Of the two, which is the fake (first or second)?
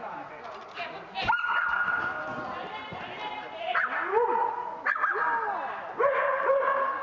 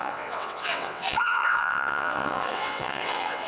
second